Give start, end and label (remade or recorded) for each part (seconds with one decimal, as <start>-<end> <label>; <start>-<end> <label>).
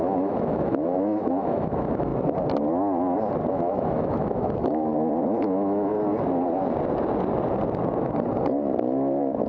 0.0-2.1 remade; 2.1-3.5 recorded; 3.5-4.9 remade; 4.9-5.4 recorded; 5.4-5.9 remade; 5.9-9.5 recorded